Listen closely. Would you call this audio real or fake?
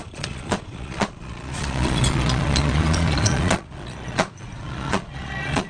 fake